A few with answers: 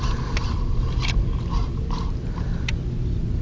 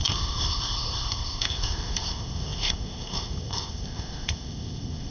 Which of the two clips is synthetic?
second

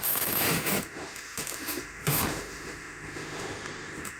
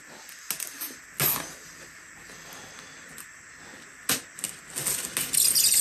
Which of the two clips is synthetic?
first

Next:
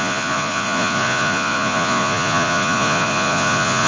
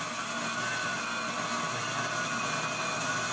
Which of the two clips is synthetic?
first